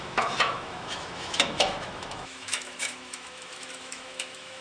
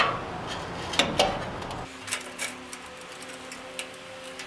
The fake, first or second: first